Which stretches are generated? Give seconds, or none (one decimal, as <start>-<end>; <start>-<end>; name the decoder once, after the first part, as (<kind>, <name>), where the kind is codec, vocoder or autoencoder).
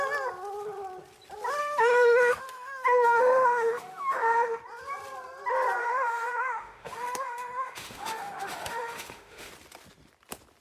1.6-4.6 (autoencoder, DAC-VAE); 5.8-9.5